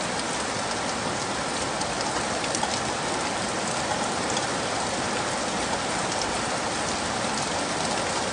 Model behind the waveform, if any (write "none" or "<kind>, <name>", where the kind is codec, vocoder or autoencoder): none